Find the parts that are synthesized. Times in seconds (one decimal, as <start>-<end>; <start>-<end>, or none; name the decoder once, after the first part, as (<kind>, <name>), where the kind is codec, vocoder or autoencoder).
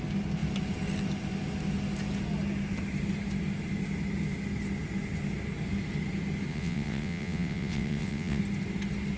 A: 6.5-8.4 (vocoder, WaveNeXt)